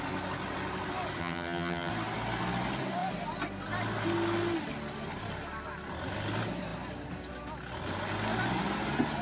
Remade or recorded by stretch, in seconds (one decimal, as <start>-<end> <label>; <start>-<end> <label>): 0.0-1.2 recorded; 1.2-1.9 remade; 1.9-9.2 recorded